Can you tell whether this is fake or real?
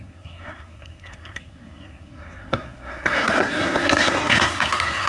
fake